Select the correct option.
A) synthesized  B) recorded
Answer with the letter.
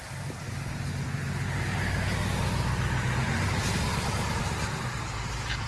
B